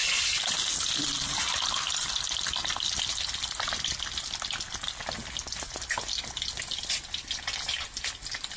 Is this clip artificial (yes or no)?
no